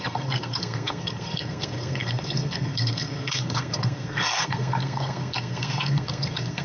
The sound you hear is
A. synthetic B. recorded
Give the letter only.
A